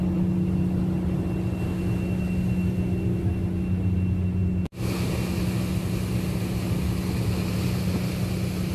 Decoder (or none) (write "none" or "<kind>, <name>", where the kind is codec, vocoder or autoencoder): none